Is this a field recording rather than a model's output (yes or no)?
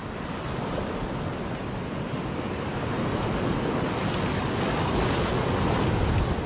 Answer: yes